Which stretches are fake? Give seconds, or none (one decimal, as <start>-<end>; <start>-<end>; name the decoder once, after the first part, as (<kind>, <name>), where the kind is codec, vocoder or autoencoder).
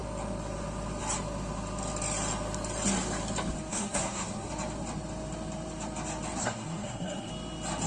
3.7-4.5 (codec, SNAC); 6.4-7.3